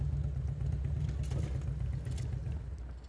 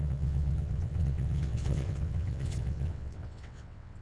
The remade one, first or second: second